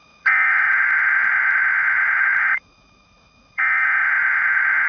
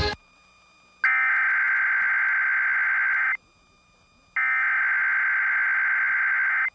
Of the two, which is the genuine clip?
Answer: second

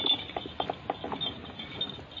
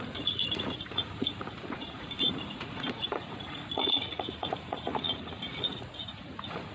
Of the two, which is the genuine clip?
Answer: first